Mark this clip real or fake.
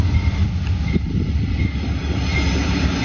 real